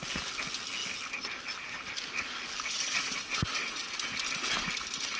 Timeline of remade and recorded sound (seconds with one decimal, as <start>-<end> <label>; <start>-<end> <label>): 0.0-5.2 recorded